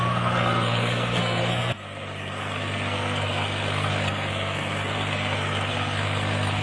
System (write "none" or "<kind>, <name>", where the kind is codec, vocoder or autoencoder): codec, SNAC